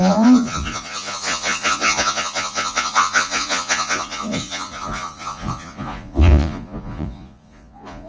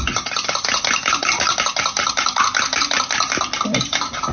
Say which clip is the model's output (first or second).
first